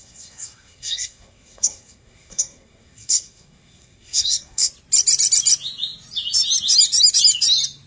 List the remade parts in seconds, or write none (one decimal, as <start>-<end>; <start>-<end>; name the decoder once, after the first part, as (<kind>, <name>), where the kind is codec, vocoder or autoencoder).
0.0-4.7 (codec, SNAC)